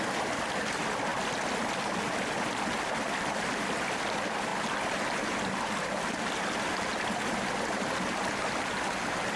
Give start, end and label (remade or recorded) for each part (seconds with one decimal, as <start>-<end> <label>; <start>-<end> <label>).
0.0-9.4 recorded